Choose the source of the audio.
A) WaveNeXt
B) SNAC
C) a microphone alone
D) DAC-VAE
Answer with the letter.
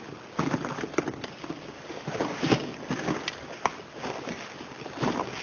C